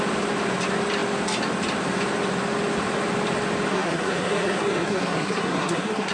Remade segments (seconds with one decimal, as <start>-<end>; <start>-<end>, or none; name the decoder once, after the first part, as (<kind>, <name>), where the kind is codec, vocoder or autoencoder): 3.7-6.1 (codec, SNAC)